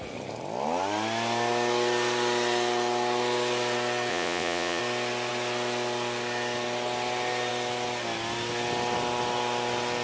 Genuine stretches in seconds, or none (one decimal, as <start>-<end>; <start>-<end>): 0.0-4.1; 4.8-10.0